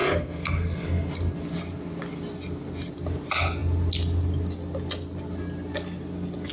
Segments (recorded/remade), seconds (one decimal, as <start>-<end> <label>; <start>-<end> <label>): 0.0-1.1 remade; 1.1-6.5 recorded

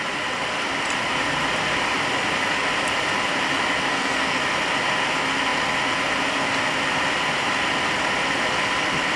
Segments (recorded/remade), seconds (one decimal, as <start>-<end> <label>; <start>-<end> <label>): 0.0-3.9 recorded; 3.9-4.4 remade; 4.4-9.2 recorded

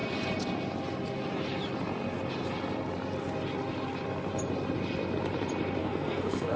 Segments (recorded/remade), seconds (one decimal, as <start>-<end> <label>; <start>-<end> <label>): 0.0-5.8 recorded; 5.8-6.6 remade

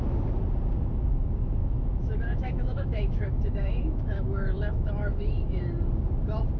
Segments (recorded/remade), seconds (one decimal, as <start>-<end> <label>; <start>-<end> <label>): 0.0-1.6 recorded; 1.6-5.6 remade; 5.6-6.6 recorded